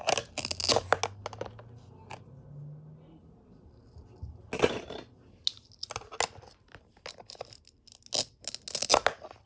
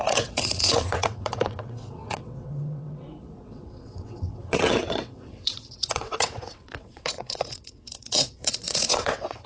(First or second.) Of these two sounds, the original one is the first